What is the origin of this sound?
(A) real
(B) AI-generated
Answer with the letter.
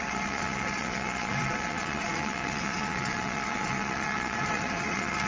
B